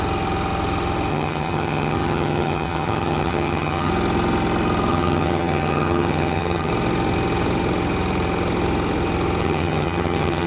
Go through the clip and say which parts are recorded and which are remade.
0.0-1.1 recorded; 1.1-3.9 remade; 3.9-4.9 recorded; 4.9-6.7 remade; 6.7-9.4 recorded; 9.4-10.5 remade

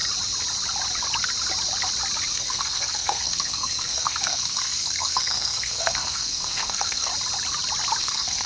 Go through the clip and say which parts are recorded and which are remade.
0.0-2.3 recorded; 2.3-7.1 remade; 7.1-8.0 recorded; 8.0-8.5 remade

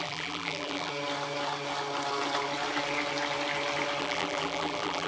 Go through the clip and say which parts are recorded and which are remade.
0.0-0.9 remade; 0.9-4.0 recorded; 4.0-5.1 remade

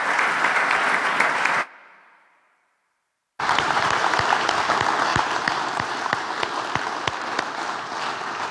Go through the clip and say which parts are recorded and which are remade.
0.0-1.8 recorded; 1.8-4.1 remade; 4.1-5.1 recorded; 5.1-6.3 remade; 6.3-8.5 recorded

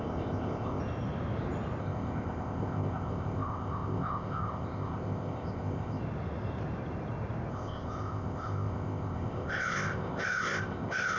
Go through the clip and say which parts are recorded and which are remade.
0.0-0.8 remade; 0.8-1.8 recorded; 1.8-6.0 remade; 6.0-7.5 recorded; 7.5-11.2 remade

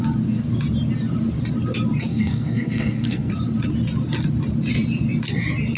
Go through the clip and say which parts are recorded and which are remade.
0.0-2.1 recorded; 2.1-3.3 remade; 3.3-5.8 recorded

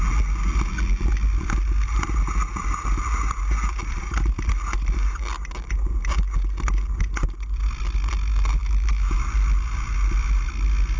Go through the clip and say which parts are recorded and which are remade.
0.0-8.6 recorded; 8.6-9.1 remade; 9.1-11.0 recorded

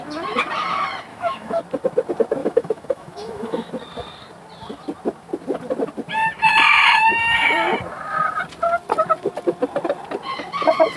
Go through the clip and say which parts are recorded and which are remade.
0.0-1.1 recorded; 1.1-1.6 remade; 1.6-2.4 recorded; 2.4-3.7 remade; 3.7-11.0 recorded